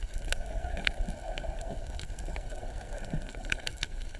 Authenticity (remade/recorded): remade